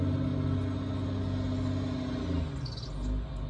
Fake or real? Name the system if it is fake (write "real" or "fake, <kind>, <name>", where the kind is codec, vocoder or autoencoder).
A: real